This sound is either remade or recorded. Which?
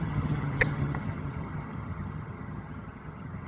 remade